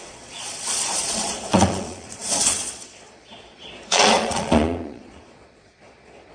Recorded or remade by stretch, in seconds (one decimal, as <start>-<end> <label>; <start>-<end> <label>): 0.0-6.3 remade